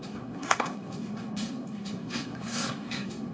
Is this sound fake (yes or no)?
yes